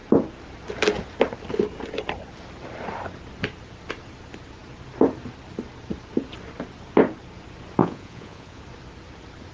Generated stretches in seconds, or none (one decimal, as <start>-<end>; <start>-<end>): 7.8-8.6